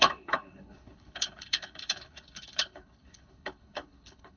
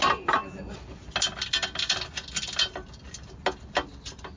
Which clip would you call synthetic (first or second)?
first